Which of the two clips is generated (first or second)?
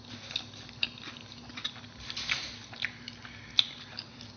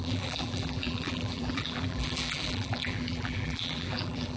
second